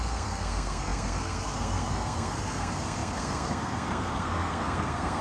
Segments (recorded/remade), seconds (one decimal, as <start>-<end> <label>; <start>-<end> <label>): 0.0-5.2 remade